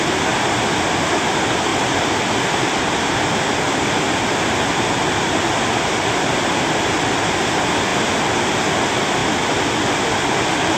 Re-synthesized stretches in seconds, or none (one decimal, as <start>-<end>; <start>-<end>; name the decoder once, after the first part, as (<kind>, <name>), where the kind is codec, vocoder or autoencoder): none